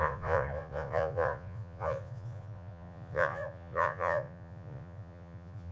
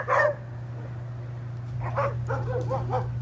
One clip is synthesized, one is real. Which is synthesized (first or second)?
first